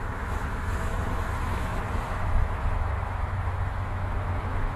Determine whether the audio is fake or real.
fake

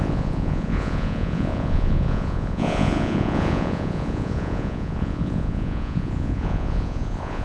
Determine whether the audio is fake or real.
fake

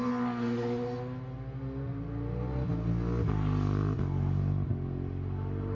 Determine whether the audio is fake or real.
real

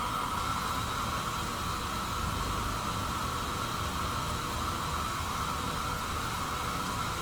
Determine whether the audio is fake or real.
real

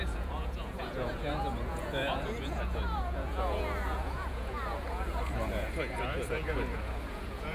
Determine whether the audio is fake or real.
fake